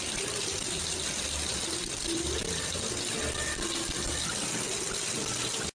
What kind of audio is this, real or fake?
real